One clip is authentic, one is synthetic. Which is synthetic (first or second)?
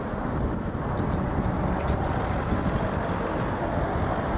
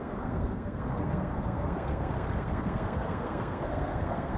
second